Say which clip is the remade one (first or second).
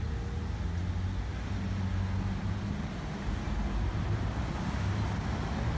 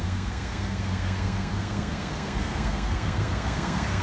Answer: second